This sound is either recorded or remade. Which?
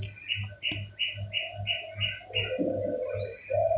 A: recorded